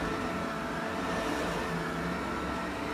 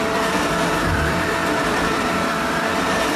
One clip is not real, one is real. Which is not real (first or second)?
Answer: second